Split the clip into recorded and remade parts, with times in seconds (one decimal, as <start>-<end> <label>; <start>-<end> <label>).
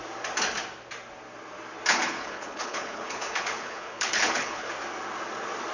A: 0.0-1.9 recorded; 1.9-4.7 remade; 4.7-5.7 recorded